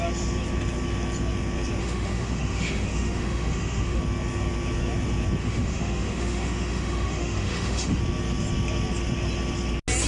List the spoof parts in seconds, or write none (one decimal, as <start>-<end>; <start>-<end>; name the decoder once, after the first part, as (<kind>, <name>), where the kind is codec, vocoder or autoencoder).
1.8-4.0 (autoencoder, DAC-VAE); 5.4-8.0